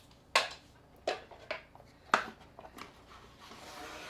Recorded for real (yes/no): yes